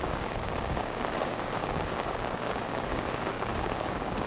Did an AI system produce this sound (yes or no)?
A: yes